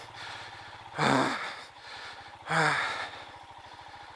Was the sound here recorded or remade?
recorded